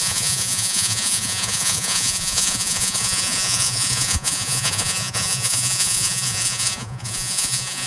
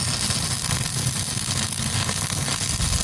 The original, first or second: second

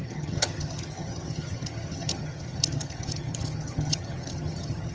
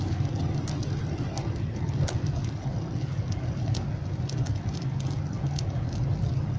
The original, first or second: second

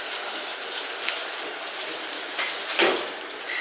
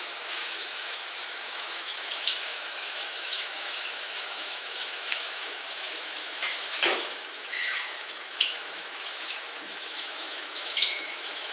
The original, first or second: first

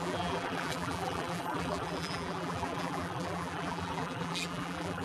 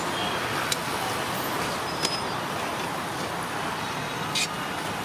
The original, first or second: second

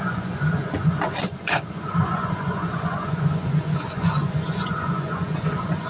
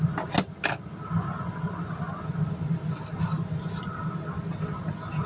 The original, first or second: second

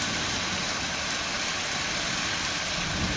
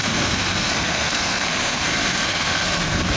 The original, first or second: first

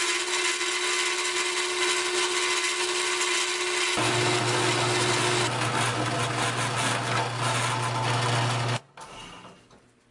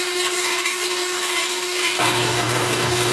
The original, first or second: first